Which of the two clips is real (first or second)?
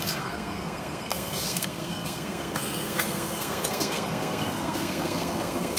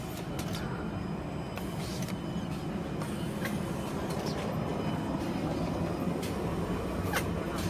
second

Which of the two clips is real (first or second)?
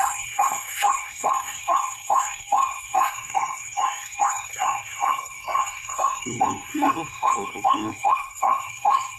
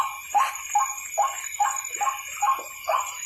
second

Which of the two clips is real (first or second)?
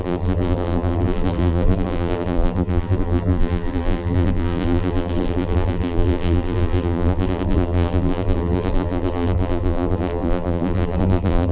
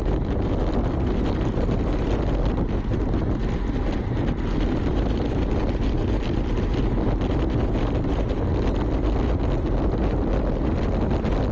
second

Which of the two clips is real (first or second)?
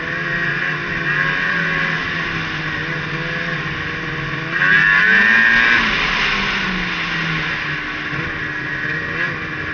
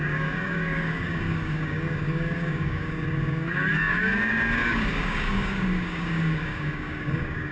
first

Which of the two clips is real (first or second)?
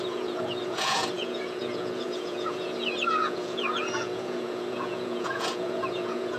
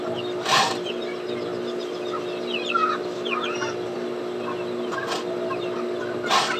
second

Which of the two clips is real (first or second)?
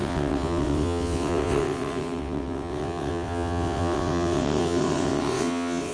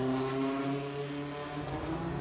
second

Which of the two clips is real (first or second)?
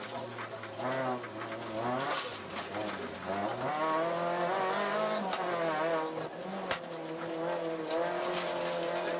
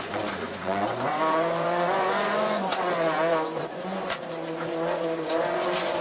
first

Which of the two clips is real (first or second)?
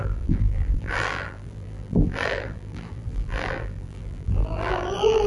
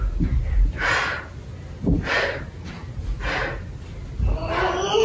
second